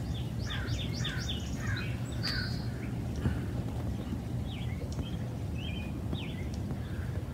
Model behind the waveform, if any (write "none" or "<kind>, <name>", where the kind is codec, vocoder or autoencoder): none